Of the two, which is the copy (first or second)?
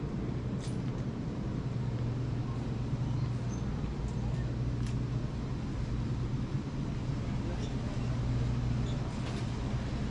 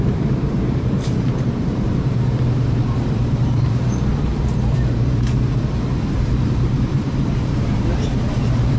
second